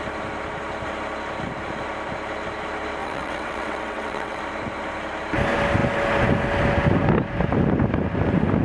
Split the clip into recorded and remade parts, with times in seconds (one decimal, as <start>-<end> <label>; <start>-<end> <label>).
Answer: 0.0-3.0 recorded; 3.0-4.4 remade; 4.4-8.6 recorded